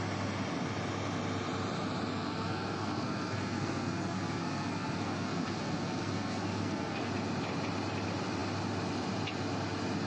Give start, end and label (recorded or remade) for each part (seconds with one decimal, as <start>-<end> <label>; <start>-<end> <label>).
0.0-2.1 recorded; 2.1-7.1 remade; 7.1-10.1 recorded